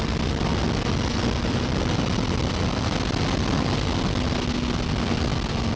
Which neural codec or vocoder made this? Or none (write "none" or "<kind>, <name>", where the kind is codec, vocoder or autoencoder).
none